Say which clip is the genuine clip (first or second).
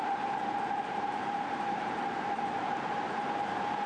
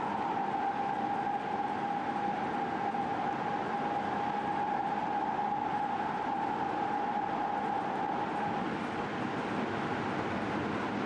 second